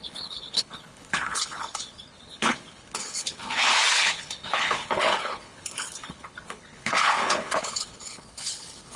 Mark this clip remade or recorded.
remade